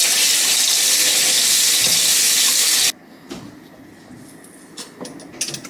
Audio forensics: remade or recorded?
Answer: recorded